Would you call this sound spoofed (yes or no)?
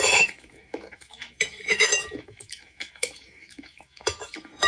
yes